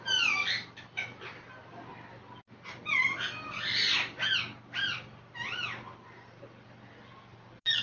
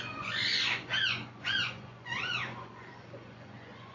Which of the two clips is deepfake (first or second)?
second